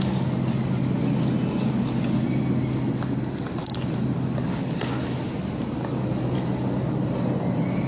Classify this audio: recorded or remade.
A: recorded